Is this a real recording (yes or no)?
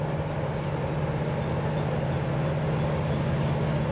yes